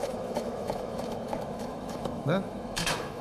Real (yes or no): no